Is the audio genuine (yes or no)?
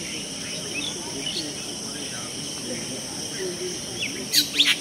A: yes